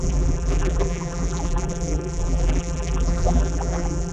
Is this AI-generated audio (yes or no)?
yes